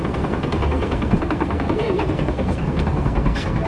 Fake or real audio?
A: fake